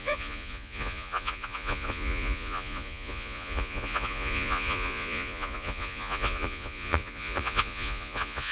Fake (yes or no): yes